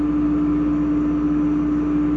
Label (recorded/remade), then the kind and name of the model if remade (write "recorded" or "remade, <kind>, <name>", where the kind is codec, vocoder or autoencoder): recorded